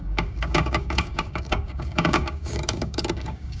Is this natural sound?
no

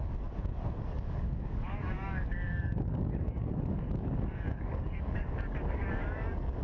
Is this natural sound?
no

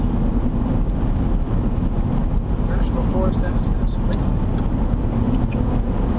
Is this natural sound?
yes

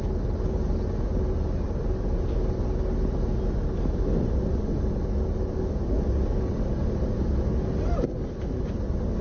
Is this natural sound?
yes